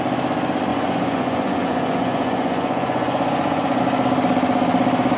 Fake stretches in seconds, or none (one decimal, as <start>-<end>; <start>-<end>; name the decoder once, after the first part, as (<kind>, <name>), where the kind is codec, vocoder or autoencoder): 0.7-3.8 (vocoder, Vocos)